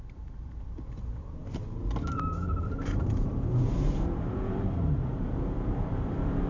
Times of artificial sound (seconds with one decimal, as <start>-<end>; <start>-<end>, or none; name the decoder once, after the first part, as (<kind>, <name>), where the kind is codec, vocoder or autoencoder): 0.0-6.5 (vocoder, BigVGAN v2)